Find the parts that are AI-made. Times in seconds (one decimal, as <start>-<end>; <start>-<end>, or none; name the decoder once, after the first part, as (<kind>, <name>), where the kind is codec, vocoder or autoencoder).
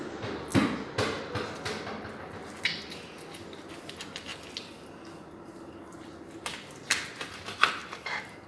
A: none